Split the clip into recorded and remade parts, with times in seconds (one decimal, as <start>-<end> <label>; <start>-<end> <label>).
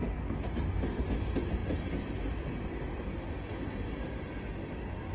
0.0-5.1 recorded